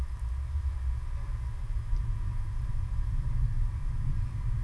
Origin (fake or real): real